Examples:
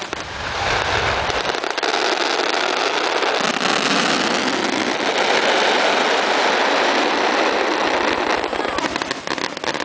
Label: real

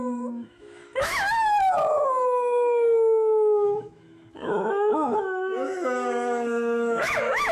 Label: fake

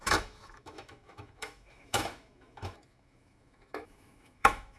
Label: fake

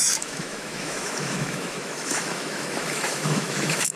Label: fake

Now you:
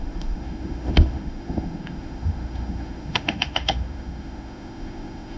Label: fake